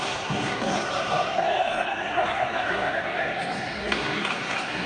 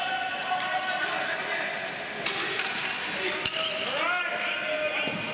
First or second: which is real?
second